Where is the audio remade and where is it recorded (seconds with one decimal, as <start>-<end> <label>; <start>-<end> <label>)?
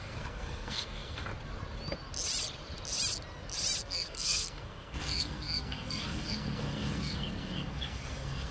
0.0-1.3 remade; 1.3-3.8 recorded; 3.8-8.5 remade